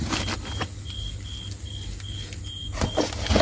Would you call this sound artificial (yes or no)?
no